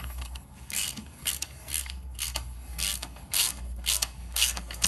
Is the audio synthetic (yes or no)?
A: yes